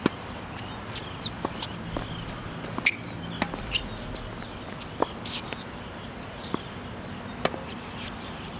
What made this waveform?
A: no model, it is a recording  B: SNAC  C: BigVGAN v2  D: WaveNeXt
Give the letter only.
A